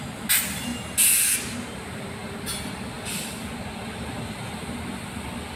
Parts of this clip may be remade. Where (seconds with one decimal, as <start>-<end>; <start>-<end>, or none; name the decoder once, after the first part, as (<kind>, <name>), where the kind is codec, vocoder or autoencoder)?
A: none